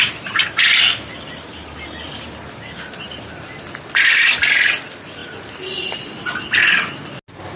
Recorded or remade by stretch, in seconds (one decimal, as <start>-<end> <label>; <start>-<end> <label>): 0.0-7.6 recorded